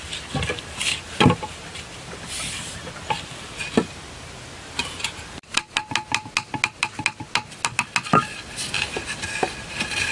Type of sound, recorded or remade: recorded